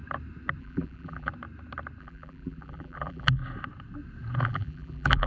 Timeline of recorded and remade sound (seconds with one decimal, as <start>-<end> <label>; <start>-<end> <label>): 0.0-0.6 recorded; 0.6-1.3 remade; 1.3-2.0 recorded; 2.0-3.4 remade; 3.4-4.4 recorded; 4.4-5.3 remade